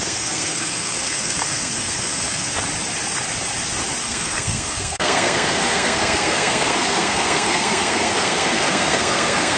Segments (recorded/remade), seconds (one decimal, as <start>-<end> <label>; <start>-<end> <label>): 0.0-2.5 remade; 2.5-4.0 recorded; 4.0-9.6 remade